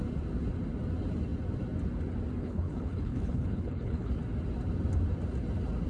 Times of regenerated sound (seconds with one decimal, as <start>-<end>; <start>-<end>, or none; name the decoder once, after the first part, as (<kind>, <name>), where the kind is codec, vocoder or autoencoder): 2.4-4.1 (codec, HILCodec)